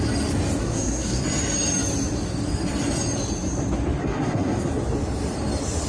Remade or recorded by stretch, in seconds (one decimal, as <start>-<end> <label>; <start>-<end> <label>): 0.0-0.6 recorded; 0.6-1.2 remade; 1.2-4.0 recorded; 4.0-4.7 remade; 4.7-5.9 recorded